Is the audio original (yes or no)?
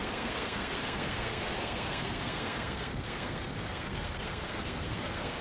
no